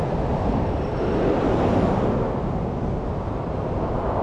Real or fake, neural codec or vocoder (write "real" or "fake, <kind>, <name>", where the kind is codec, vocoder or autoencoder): real